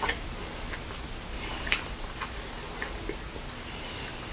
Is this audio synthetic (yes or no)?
no